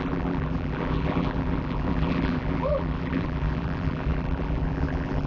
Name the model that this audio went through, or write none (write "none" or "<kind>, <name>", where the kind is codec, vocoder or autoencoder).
vocoder, BigVGAN v2